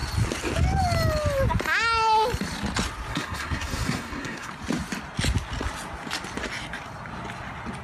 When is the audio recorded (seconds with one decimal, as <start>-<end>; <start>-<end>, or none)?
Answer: 0.0-3.1; 4.5-7.8